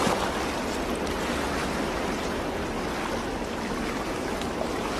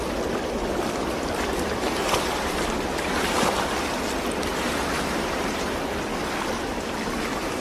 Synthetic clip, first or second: second